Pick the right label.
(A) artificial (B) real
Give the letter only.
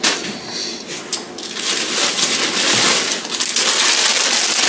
B